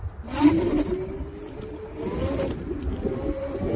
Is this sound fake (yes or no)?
no